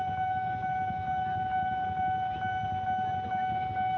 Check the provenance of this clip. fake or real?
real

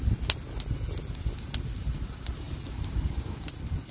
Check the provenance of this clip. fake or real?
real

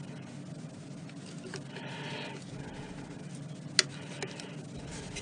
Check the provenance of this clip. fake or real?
real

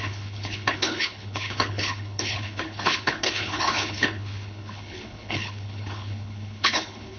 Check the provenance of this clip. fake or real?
fake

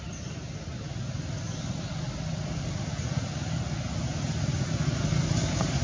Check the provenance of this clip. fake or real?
real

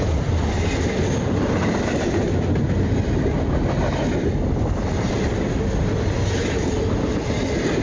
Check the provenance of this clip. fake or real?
real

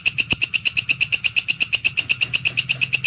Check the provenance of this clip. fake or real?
real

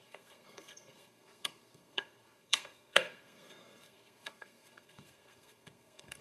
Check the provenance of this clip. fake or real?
fake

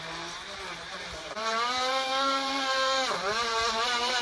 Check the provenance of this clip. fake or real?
fake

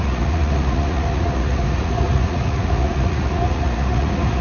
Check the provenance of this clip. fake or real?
fake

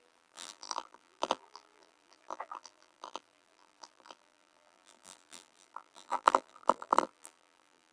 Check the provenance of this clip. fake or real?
fake